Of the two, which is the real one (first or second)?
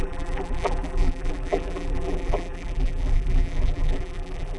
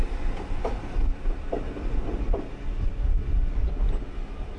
second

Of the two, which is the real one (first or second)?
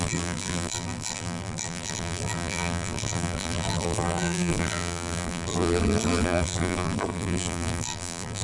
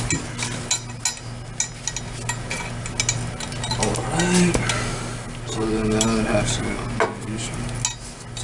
second